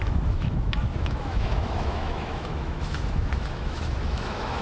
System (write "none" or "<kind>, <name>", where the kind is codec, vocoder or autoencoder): autoencoder, DAC-VAE